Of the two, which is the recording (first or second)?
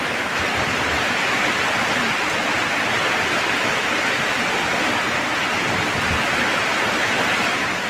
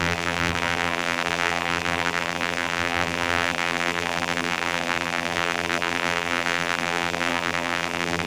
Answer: first